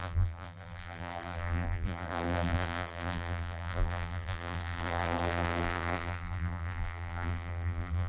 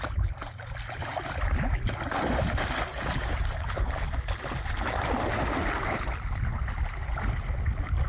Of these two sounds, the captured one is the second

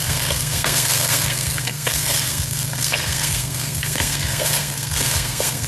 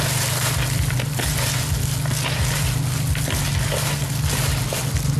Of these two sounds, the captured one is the second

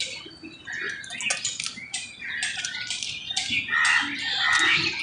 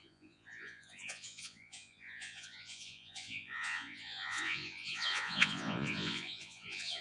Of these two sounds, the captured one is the first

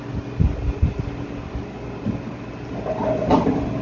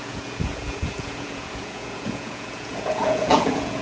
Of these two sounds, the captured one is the first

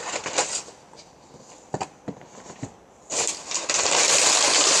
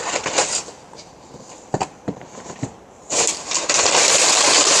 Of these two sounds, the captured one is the first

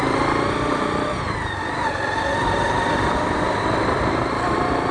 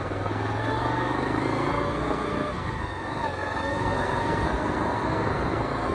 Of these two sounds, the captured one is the first